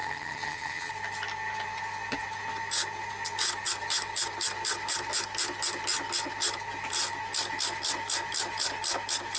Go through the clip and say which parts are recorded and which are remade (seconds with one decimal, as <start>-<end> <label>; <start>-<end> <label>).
0.0-0.9 remade; 0.9-9.4 recorded

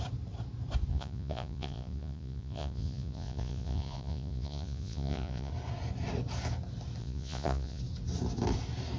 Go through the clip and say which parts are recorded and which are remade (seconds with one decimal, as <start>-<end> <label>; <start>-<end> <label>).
0.0-0.9 recorded; 0.9-5.5 remade; 5.5-7.0 recorded; 7.0-7.8 remade; 7.8-9.0 recorded

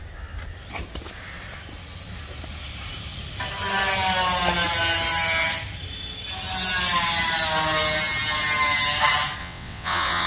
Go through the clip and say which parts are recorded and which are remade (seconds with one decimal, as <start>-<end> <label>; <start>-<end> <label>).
0.0-9.4 recorded; 9.4-10.3 remade

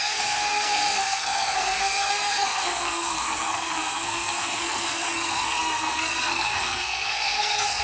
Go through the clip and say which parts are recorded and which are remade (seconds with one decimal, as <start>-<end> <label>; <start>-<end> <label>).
0.0-7.8 remade

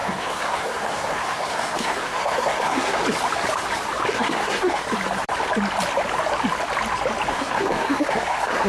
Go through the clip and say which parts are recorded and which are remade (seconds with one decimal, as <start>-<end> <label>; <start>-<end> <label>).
0.0-3.0 remade; 3.0-4.1 recorded; 4.1-4.8 remade; 4.8-7.3 recorded; 7.3-8.7 remade

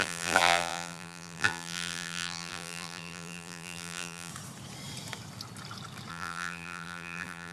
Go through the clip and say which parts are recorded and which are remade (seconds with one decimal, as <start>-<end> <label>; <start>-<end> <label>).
0.0-4.3 remade; 4.3-6.1 recorded; 6.1-7.5 remade